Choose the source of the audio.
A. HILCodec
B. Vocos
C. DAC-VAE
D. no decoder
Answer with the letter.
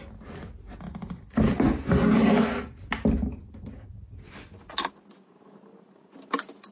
D